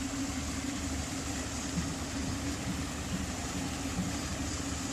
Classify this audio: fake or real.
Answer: real